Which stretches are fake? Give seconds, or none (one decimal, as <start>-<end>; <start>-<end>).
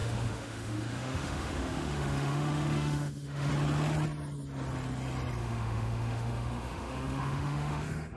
0.0-3.5; 5.4-8.2